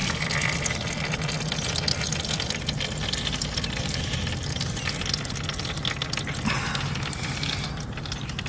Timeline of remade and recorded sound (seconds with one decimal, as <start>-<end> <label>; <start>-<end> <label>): 0.0-8.5 recorded